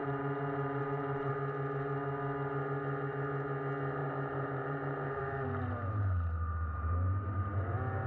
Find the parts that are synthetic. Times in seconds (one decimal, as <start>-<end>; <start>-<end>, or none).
0.0-1.3; 4.0-5.2